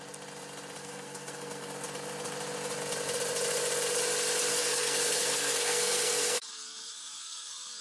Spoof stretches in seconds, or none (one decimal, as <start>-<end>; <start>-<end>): 0.8-1.7; 4.5-7.8

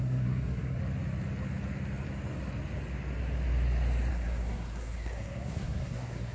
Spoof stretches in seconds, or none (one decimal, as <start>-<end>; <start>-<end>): 0.0-0.8; 4.1-6.3

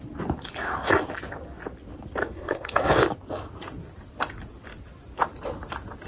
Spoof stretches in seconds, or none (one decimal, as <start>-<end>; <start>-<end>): 2.2-2.9

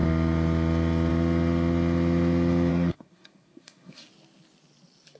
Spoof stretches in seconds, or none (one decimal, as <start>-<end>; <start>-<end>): 2.7-4.1

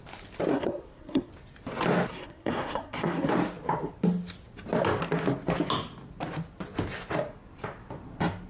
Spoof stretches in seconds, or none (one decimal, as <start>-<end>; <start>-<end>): 0.5-1.3; 2.1-3.3

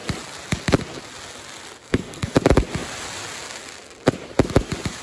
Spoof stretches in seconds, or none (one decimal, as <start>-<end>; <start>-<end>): 1.8-2.3

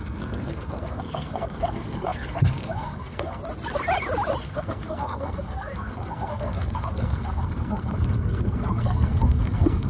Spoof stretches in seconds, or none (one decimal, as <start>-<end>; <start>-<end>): 0.0-3.4; 4.4-9.9

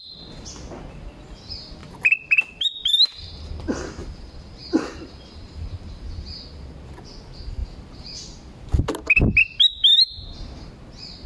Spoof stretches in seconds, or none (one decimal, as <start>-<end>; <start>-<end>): none